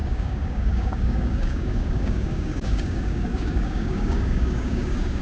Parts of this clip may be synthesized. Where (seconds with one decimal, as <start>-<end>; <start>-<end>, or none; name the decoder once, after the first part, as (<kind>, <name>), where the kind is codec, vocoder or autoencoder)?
0.0-5.2 (codec, DAC)